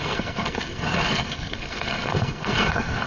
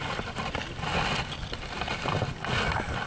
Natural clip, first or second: second